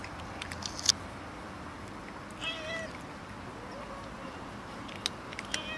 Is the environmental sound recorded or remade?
recorded